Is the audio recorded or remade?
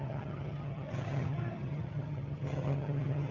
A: remade